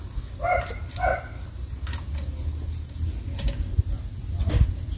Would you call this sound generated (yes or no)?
no